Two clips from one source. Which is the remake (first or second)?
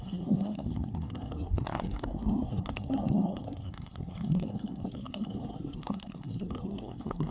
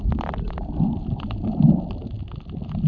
first